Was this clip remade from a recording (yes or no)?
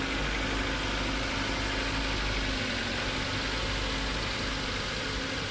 no